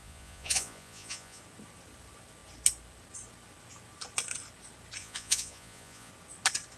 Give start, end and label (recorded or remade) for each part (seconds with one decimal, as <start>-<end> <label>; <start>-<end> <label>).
0.0-1.4 remade; 1.4-5.0 recorded; 5.0-6.1 remade; 6.1-6.8 recorded